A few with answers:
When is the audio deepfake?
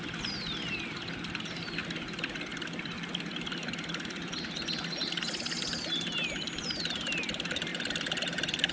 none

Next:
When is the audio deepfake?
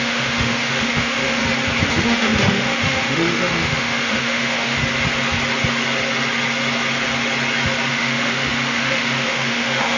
0.0-1.4 (autoencoder, DAC-VAE); 1.9-4.8; 7.9-10.0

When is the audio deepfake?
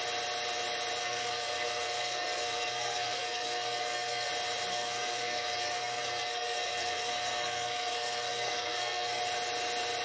1.0-4.3 (codec, SNAC); 4.7-9.2